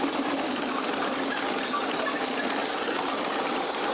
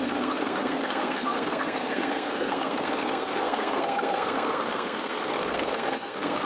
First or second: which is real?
first